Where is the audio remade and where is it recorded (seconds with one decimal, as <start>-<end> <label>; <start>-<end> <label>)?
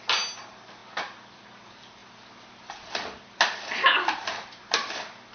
0.0-5.3 recorded